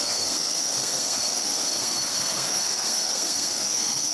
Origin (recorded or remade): remade